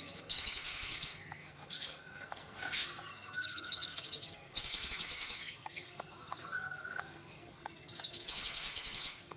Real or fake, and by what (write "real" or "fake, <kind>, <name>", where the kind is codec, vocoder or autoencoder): fake, codec, SNAC